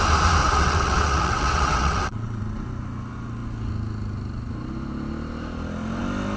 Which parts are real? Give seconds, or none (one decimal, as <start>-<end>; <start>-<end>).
0.0-0.4; 2.4-6.4

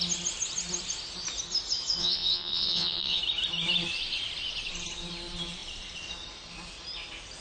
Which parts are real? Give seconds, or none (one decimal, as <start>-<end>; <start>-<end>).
0.0-2.0; 3.2-7.4

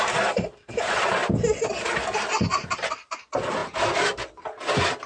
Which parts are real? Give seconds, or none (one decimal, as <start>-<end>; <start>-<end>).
0.0-5.1